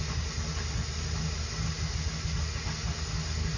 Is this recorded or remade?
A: recorded